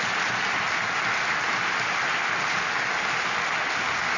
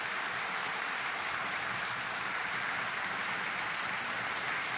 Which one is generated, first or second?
second